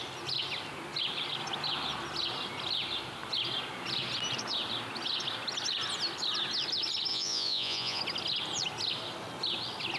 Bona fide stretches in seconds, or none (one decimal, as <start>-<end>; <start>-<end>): 0.0-7.1; 8.0-10.0